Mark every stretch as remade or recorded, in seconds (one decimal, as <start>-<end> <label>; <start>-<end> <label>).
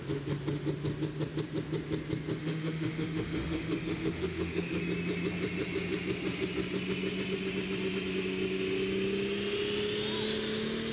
0.0-2.4 recorded; 2.4-4.8 remade; 4.8-10.9 recorded